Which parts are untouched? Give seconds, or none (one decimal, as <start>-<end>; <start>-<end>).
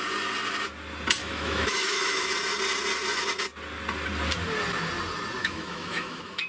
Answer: 0.0-1.2; 2.3-5.4